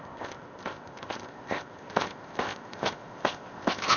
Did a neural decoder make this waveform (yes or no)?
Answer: yes